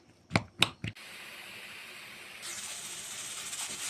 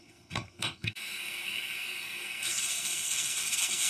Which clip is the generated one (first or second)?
second